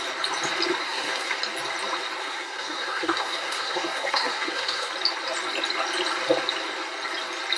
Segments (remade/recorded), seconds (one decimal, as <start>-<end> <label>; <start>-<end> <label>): 0.0-0.8 recorded; 0.8-1.4 remade; 1.4-2.2 recorded; 2.2-4.9 remade; 4.9-7.6 recorded